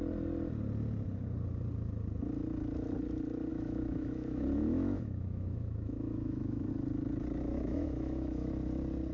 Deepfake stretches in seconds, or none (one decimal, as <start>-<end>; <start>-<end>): 3.5-6.7; 7.5-8.5